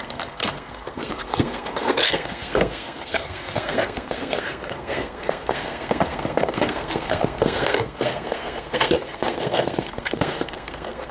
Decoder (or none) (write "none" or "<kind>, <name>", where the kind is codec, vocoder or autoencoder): codec, SNAC